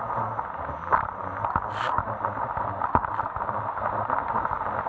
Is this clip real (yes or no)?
yes